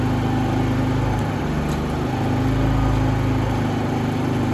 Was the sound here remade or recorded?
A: recorded